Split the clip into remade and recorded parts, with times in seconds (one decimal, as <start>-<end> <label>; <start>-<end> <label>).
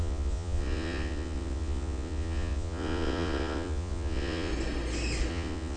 0.0-4.5 remade; 4.5-5.3 recorded; 5.3-5.8 remade